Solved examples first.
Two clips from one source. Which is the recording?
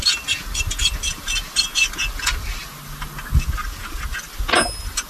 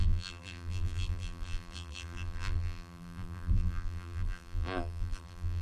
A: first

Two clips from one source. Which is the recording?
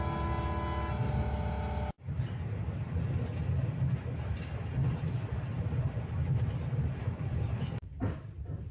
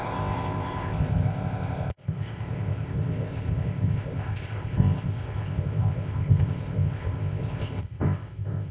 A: first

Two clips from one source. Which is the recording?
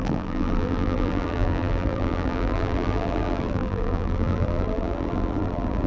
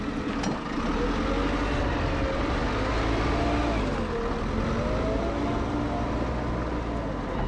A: second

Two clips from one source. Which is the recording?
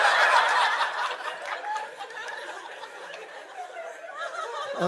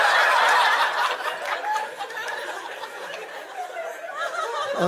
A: second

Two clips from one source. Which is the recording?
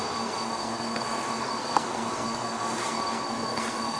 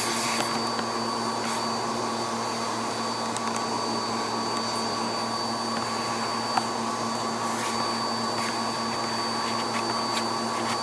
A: second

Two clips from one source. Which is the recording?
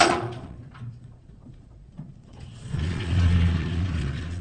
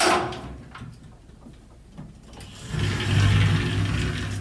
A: second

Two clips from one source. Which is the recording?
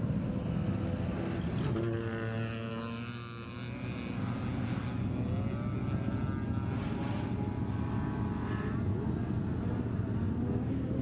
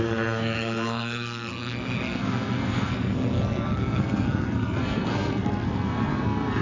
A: first